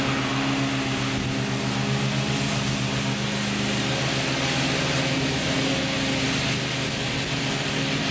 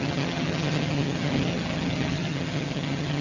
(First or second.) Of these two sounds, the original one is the first